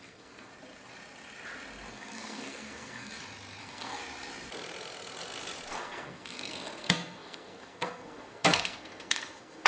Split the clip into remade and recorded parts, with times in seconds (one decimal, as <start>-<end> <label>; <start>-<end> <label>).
0.0-0.5 remade; 0.5-1.9 recorded; 1.9-3.1 remade; 3.1-3.6 recorded; 3.6-4.0 remade; 4.0-5.7 recorded; 5.7-9.7 remade